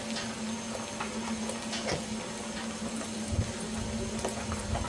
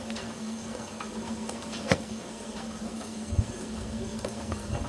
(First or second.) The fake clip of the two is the second